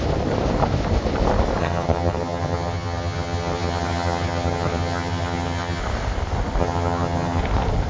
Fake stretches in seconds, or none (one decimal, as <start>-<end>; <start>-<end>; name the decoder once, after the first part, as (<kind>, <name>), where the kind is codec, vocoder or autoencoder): 1.6-5.8 (vocoder, HiFi-GAN); 6.6-7.4

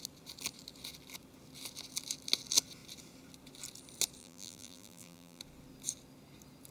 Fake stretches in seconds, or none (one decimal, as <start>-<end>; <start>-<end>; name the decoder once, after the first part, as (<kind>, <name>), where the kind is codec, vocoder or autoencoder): 4.2-5.4 (vocoder, BigVGAN v2)

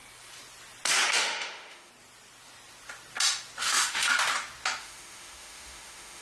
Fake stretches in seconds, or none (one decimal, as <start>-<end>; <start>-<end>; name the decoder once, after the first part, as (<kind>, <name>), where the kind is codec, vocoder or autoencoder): 1.1-1.9 (autoencoder, DAC-VAE); 3.6-4.1; 4.8-6.2

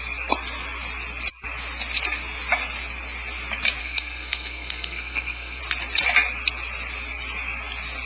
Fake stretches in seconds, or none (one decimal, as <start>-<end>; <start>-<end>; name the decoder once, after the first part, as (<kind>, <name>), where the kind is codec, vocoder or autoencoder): 3.8-5.6 (codec, SNAC)

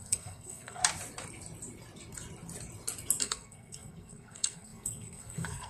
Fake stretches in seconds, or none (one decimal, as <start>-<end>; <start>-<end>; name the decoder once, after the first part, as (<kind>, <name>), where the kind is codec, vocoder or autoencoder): 0.0-0.8 (codec, SNAC); 3.2-5.7

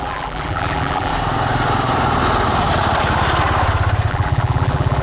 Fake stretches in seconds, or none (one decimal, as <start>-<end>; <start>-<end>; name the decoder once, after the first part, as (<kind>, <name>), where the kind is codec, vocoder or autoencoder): 0.0-1.1 (vocoder, BigVGAN v2); 4.1-5.0

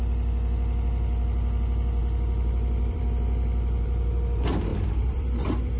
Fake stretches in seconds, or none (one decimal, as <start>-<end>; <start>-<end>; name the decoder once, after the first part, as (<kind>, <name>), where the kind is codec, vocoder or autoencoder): 2.0-4.2 (vocoder, BigVGAN v2); 4.7-5.8

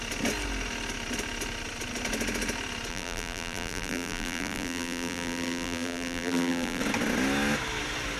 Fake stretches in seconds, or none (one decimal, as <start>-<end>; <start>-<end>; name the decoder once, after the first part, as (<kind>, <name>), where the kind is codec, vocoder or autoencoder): 2.9-6.8 (vocoder, BigVGAN v2)